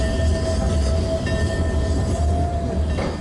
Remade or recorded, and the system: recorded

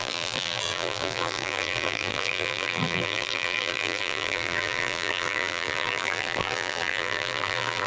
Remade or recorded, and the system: remade, vocoder, BigVGAN v2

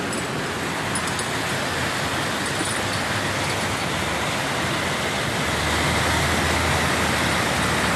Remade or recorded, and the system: recorded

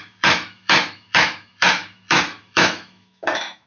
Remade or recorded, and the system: remade, autoencoder, DAC-VAE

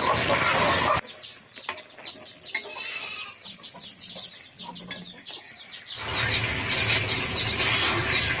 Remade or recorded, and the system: recorded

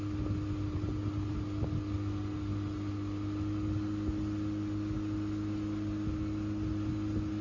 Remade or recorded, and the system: recorded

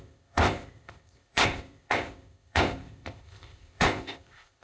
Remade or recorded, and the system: remade, codec, ZipCodec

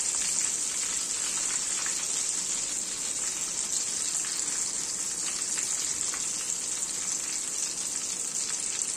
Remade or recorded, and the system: recorded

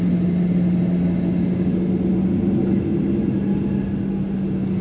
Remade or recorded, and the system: recorded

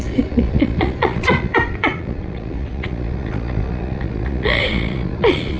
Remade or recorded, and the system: remade, vocoder, Vocos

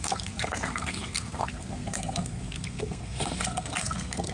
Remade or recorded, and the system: remade, codec, SNAC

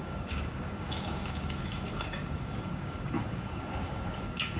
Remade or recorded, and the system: remade, codec, DAC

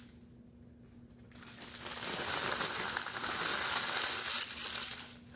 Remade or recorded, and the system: recorded